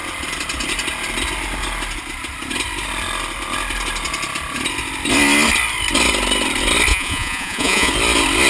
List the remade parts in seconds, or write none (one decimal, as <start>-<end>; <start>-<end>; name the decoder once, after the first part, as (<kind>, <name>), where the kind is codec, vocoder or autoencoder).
6.9-7.9 (vocoder, Vocos)